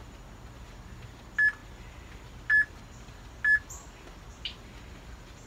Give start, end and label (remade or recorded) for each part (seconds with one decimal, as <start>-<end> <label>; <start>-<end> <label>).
0.0-5.5 recorded